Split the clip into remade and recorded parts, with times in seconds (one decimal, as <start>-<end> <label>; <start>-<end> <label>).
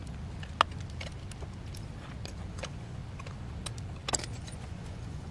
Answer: 0.0-2.5 recorded; 2.5-3.0 remade; 3.0-4.3 recorded; 4.3-5.3 remade